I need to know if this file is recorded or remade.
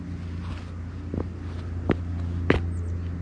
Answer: recorded